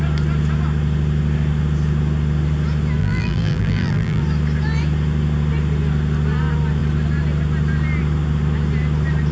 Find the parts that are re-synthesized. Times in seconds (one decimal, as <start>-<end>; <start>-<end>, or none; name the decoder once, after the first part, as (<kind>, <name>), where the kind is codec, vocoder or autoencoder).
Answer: 3.0-4.2 (vocoder, BigVGAN v2)